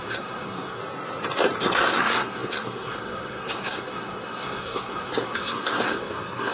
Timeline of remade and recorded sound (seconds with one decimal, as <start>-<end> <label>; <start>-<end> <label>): 0.0-0.8 remade; 0.8-1.6 recorded; 1.6-6.5 remade